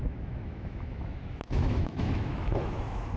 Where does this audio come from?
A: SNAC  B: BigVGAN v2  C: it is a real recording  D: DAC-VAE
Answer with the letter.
D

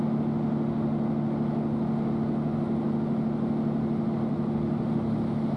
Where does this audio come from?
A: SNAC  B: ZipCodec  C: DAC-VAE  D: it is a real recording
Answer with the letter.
D